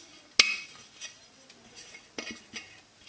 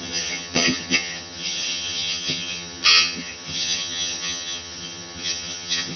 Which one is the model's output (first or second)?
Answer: second